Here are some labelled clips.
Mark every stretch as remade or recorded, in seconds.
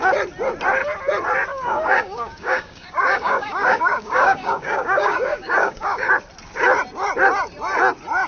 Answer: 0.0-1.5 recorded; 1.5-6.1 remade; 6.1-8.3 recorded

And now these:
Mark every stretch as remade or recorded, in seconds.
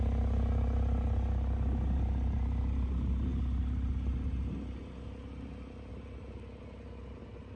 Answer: 0.0-7.6 recorded